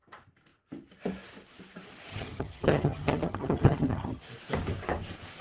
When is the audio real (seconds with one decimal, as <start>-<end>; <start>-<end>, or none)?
0.0-2.1; 4.2-5.4